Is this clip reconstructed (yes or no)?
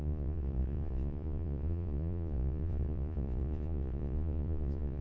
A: yes